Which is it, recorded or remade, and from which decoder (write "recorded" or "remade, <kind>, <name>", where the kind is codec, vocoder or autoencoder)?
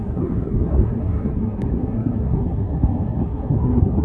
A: remade, codec, SNAC